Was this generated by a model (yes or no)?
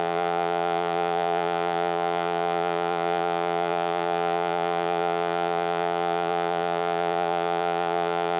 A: yes